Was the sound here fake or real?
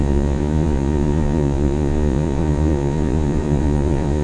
fake